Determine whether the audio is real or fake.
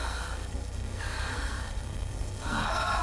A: fake